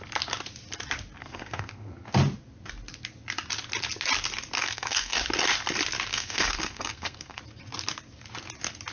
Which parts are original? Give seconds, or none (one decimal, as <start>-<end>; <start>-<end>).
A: 0.0-1.2; 1.9-4.6; 5.2-6.1; 7.4-8.9